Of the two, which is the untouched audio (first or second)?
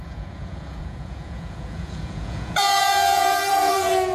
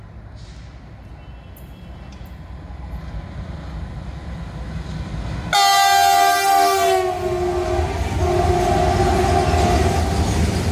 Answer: second